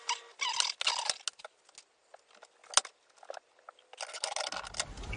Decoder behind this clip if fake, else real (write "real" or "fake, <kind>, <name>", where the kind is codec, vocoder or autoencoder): real